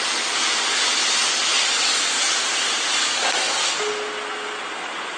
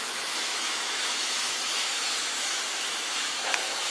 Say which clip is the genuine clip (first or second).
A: first